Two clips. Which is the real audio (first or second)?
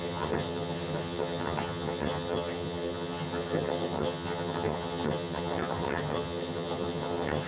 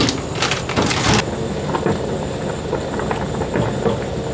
second